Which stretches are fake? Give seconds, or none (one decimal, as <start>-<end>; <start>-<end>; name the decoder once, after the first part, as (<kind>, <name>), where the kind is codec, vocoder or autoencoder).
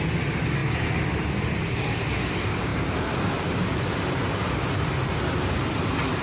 none